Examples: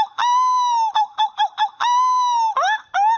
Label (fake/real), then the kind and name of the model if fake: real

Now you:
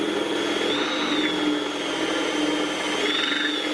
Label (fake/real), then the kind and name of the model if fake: real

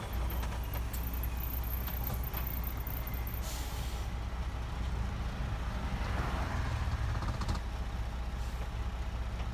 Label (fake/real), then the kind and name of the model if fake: real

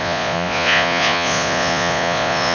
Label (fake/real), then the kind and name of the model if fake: fake, vocoder, Vocos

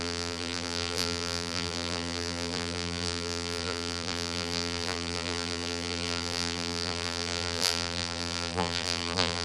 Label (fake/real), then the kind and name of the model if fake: fake, vocoder, BigVGAN v2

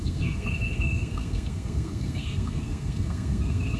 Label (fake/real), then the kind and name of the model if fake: fake, codec, SNAC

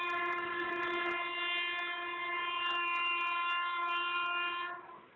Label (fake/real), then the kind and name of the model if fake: real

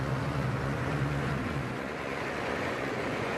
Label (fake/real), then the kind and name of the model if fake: fake, vocoder, Vocos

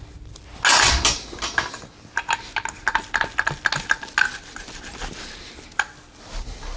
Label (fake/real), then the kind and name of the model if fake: real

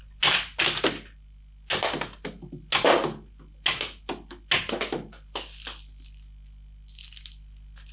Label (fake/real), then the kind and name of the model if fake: real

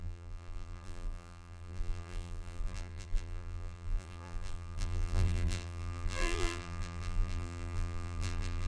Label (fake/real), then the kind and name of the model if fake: fake, vocoder, BigVGAN v2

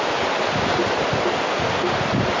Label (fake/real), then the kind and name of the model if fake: fake, vocoder, BigVGAN v2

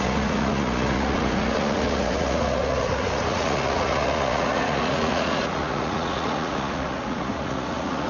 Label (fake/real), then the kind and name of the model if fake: fake, vocoder, Vocos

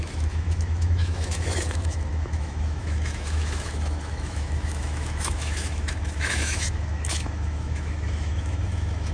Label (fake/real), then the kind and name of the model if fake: fake, autoencoder, DAC-VAE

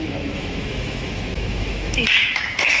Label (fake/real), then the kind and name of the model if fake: fake, autoencoder, DAC-VAE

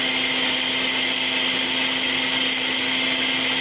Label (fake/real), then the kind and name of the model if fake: real